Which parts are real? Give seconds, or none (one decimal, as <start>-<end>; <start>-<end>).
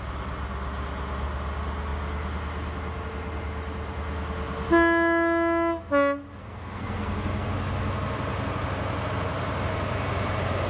0.0-6.4; 7.5-10.7